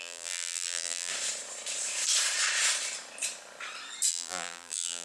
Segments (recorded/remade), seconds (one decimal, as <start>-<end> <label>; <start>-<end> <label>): 0.0-1.1 remade; 1.1-4.1 recorded; 4.1-5.0 remade